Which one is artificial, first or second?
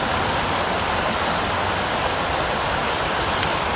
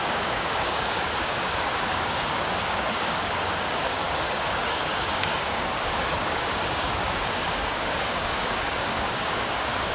second